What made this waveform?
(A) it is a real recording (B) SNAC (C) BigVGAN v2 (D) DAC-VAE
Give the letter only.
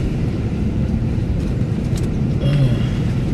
C